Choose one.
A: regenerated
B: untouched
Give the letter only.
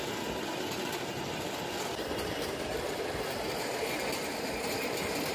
B